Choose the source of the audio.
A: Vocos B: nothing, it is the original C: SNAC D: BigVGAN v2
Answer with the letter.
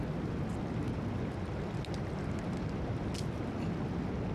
B